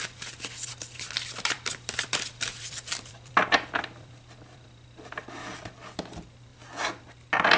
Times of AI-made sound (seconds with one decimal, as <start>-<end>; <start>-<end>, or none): 0.7-5.1